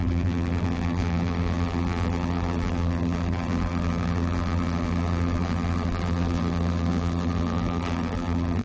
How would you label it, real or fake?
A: fake